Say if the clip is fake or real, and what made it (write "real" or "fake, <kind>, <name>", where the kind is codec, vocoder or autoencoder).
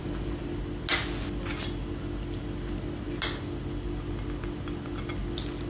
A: real